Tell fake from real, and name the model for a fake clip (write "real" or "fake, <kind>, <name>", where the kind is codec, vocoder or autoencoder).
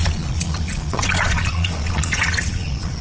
fake, vocoder, Vocos